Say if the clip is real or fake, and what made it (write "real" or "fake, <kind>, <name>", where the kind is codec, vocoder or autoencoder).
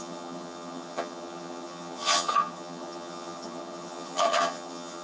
fake, vocoder, HiFi-GAN